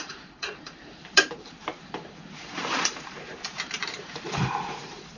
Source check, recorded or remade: remade